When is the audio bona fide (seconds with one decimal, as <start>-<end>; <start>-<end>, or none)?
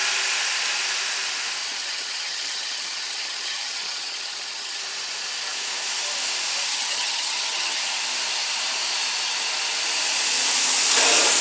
0.0-1.6; 4.8-6.7; 7.8-11.4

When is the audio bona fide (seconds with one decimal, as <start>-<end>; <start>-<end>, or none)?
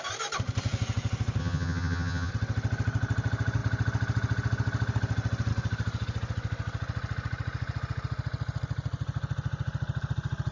0.0-1.4; 2.3-10.5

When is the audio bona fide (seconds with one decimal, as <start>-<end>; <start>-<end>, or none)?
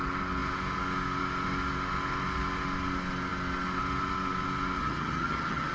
0.0-4.8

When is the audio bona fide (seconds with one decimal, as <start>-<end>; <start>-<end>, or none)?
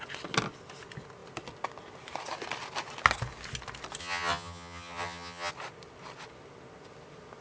0.0-4.0; 5.5-7.4